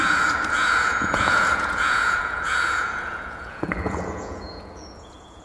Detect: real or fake fake